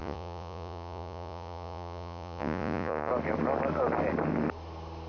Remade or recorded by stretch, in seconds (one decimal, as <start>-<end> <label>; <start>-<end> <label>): 0.0-3.1 remade; 3.1-5.1 recorded